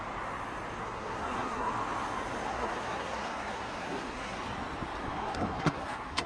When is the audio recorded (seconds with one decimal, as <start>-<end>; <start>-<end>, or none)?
0.0-0.8; 1.7-2.5; 4.4-5.0

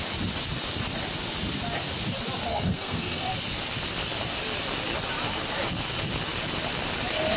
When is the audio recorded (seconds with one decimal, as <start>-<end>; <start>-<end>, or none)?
0.0-2.5; 3.3-7.4

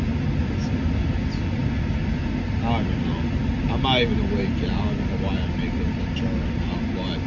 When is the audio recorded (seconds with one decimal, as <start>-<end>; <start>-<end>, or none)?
0.0-7.3